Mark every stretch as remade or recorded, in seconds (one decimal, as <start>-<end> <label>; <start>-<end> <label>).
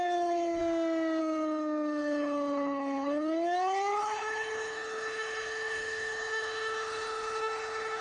0.0-0.6 remade; 0.6-1.2 recorded; 1.2-8.0 remade